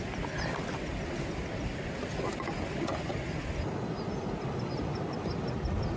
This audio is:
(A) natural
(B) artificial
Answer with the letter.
A